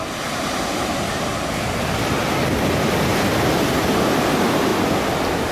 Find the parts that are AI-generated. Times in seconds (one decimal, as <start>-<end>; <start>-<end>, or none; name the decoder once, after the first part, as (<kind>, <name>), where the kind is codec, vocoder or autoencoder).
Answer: 0.0-1.3 (vocoder, BigVGAN v2); 3.9-4.7